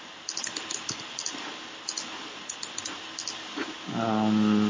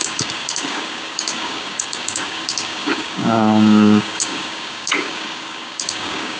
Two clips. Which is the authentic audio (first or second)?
first